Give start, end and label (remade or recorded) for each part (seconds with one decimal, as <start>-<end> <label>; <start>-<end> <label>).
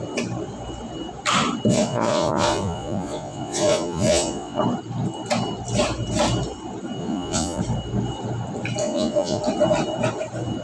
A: 0.0-1.7 recorded; 1.7-4.6 remade; 4.6-7.0 recorded; 7.0-7.6 remade; 7.6-8.8 recorded; 8.8-9.4 remade; 9.4-10.6 recorded